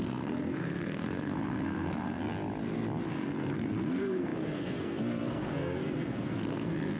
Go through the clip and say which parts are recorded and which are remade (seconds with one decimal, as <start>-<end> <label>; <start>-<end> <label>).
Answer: 0.0-2.2 remade; 2.2-3.1 recorded; 3.1-7.0 remade

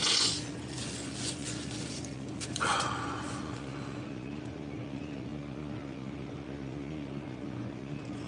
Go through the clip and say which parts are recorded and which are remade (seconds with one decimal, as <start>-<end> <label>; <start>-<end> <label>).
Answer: 0.0-8.3 remade

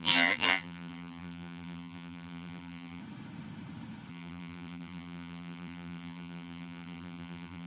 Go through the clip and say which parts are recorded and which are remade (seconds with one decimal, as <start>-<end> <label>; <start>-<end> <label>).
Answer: 0.0-3.0 remade; 3.0-4.1 recorded; 4.1-7.7 remade

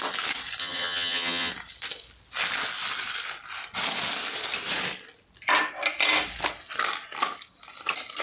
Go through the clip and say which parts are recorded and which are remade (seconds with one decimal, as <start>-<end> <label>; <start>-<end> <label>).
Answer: 0.0-0.6 recorded; 0.6-1.5 remade; 1.5-8.2 recorded

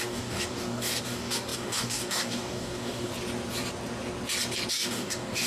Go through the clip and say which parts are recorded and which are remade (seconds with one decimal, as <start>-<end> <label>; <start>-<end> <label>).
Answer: 0.0-3.1 remade; 3.1-4.7 recorded; 4.7-5.5 remade

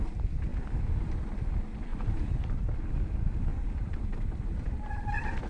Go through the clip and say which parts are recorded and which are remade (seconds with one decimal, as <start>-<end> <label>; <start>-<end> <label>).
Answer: 0.0-1.9 recorded; 1.9-2.9 remade; 2.9-3.5 recorded; 3.5-5.5 remade

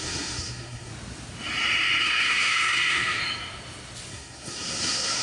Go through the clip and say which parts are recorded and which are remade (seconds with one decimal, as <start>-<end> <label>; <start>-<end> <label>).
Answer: 0.0-0.9 remade; 0.9-2.0 recorded; 2.0-3.2 remade; 3.2-4.1 recorded; 4.1-5.2 remade